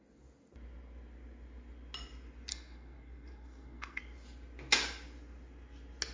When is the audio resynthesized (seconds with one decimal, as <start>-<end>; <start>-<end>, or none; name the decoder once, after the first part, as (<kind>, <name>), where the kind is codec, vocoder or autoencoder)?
2.5-4.0 (codec, SNAC)